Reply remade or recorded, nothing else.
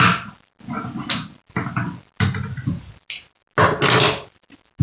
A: recorded